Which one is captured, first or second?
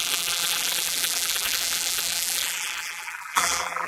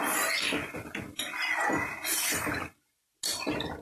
second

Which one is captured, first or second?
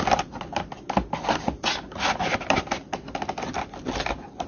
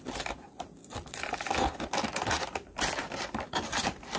first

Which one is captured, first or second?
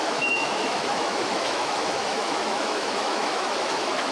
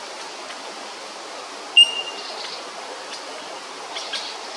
second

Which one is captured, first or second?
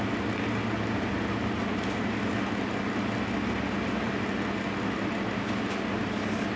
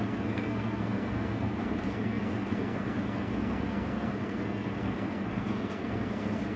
first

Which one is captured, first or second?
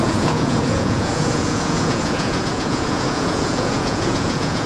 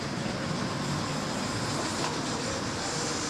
second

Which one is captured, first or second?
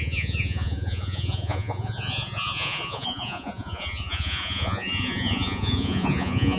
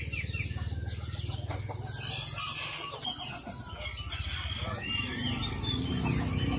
second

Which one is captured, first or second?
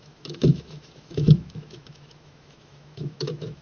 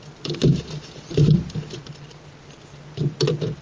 second